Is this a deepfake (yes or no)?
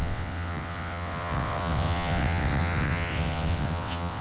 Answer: yes